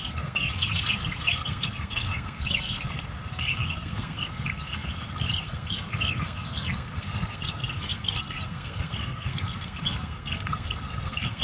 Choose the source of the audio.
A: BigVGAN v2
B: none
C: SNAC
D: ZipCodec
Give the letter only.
C